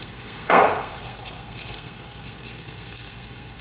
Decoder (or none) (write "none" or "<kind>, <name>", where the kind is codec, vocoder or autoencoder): codec, SNAC